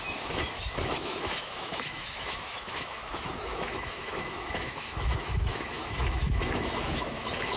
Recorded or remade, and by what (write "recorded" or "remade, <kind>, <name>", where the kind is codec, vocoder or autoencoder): remade, autoencoder, DAC-VAE